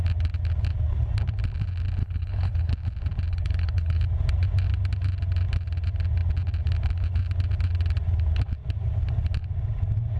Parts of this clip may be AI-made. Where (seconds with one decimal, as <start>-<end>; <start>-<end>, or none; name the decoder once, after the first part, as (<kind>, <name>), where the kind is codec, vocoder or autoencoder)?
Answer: 2.0-2.7 (codec, HILCodec); 3.3-4.0